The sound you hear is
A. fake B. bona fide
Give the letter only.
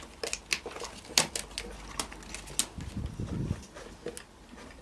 B